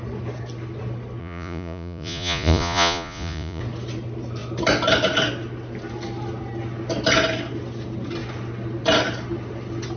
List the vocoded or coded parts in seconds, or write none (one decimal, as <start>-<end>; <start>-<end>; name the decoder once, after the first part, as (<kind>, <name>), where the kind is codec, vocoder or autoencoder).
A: 1.2-3.6 (vocoder, Vocos)